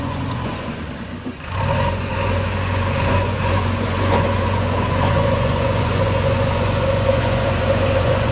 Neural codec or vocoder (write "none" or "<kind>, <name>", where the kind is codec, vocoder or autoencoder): vocoder, Vocos